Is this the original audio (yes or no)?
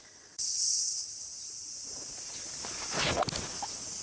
yes